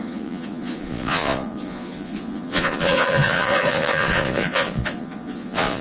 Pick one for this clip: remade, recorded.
remade